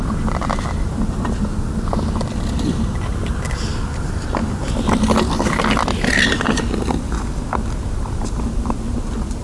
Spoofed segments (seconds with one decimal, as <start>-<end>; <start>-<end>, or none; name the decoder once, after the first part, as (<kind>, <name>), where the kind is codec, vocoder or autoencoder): none